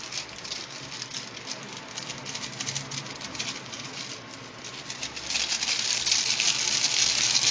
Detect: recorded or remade recorded